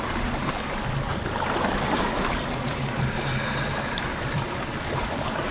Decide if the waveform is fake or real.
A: fake